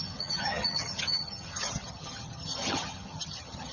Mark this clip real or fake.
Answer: fake